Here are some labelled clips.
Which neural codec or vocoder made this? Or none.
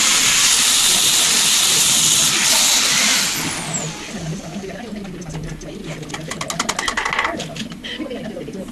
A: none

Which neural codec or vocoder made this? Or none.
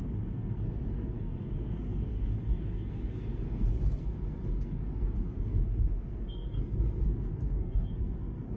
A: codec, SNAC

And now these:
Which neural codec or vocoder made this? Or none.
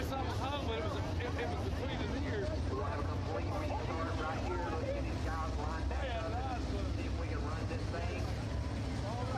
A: none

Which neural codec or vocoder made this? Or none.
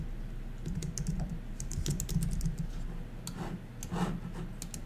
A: none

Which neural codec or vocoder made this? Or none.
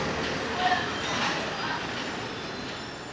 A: none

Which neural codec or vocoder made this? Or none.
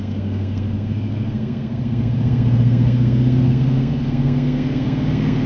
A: codec, SNAC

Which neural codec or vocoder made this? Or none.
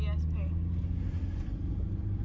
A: none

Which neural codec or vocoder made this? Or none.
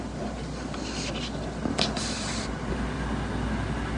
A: none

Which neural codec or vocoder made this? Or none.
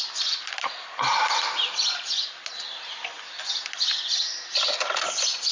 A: none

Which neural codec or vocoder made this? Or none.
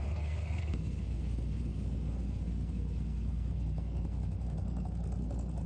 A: codec, SNAC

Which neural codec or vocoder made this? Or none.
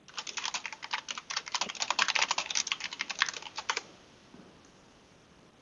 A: none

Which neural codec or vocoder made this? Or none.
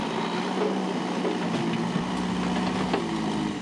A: none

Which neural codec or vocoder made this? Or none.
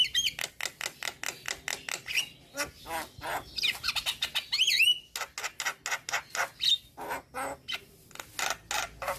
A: none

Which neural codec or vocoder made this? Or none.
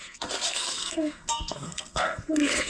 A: codec, SNAC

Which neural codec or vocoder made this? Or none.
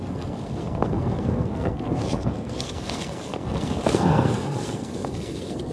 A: codec, SNAC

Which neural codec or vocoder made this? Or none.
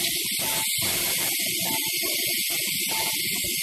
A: none